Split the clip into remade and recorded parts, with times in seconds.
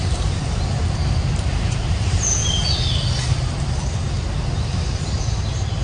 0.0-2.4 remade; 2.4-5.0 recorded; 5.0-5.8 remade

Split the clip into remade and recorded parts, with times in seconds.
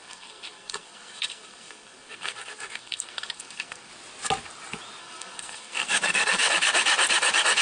0.0-3.9 remade; 3.9-5.0 recorded; 5.0-6.5 remade; 6.5-7.6 recorded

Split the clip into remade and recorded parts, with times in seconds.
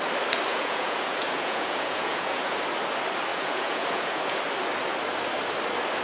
0.0-0.5 recorded; 0.5-2.6 remade; 2.6-3.3 recorded; 3.3-4.4 remade; 4.4-6.0 recorded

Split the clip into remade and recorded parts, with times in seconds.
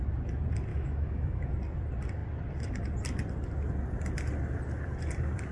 0.0-0.7 recorded; 0.7-1.5 remade; 1.5-5.5 recorded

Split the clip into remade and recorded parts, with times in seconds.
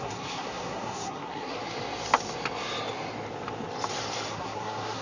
0.0-1.6 remade; 1.6-4.3 recorded; 4.3-5.0 remade